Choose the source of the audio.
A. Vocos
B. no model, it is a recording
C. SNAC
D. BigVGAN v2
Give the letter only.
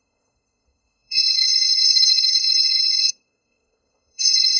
C